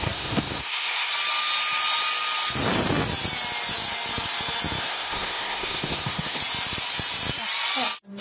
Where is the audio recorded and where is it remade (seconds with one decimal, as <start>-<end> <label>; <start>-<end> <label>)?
0.0-1.1 remade; 1.1-4.8 recorded; 4.8-6.4 remade; 6.4-8.2 recorded